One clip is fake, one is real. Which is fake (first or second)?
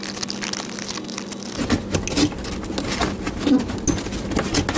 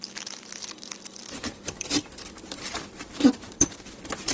second